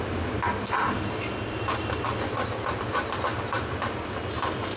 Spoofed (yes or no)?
no